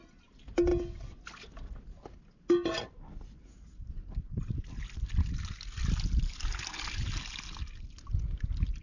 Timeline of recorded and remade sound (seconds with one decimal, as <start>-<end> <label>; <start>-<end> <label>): 0.0-8.8 recorded